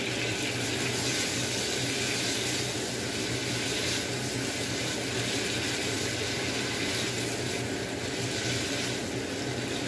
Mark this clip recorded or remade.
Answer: recorded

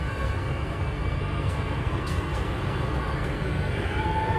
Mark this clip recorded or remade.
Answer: remade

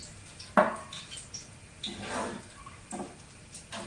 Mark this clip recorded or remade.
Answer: recorded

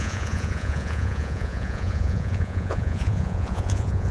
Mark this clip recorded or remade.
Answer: remade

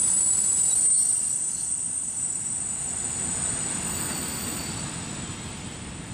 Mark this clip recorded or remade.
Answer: recorded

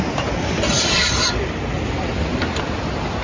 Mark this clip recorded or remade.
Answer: recorded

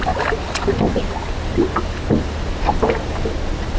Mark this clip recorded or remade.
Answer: recorded